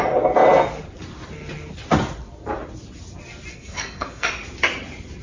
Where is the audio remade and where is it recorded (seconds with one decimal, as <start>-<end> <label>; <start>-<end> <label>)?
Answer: 0.0-3.5 recorded; 3.5-4.3 remade; 4.3-5.2 recorded